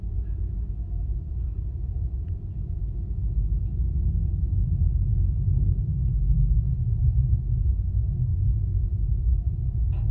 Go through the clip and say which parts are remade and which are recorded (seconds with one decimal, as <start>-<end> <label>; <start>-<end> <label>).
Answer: 0.0-10.1 recorded